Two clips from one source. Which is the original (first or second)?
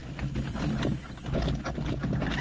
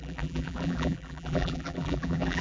first